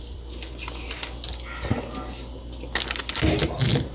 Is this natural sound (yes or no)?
yes